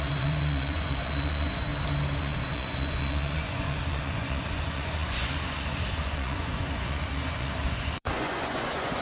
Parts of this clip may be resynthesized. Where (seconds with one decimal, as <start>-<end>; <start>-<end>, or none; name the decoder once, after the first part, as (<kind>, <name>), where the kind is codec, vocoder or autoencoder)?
0.0-1.7 (vocoder, Vocos); 2.2-9.0